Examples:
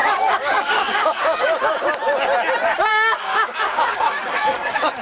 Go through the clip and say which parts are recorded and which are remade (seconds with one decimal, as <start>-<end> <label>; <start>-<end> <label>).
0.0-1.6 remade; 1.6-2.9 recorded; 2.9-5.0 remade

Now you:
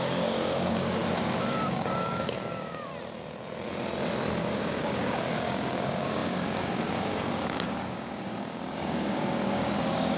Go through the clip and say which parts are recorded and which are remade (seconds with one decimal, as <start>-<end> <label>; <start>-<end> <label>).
0.0-2.9 remade; 2.9-4.4 recorded; 4.4-10.2 remade

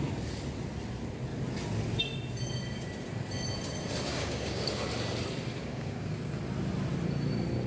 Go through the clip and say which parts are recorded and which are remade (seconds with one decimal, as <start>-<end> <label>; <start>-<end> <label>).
0.0-4.1 recorded; 4.1-4.7 remade; 4.7-5.6 recorded; 5.6-6.3 remade; 6.3-7.7 recorded

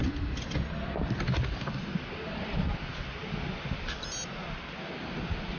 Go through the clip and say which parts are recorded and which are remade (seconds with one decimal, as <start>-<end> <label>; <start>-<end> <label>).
0.0-5.6 recorded

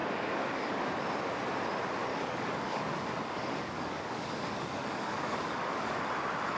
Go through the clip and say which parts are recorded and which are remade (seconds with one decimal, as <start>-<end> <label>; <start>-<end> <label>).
0.0-0.8 remade; 0.8-2.1 recorded; 2.1-6.1 remade; 6.1-6.6 recorded